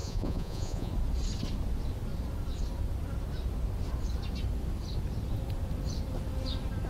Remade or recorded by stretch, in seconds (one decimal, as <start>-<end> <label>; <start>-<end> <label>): 0.0-0.9 remade; 0.9-6.9 recorded